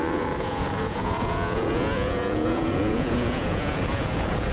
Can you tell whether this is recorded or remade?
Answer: remade